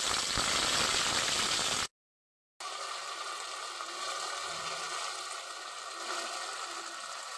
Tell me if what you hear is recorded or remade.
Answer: recorded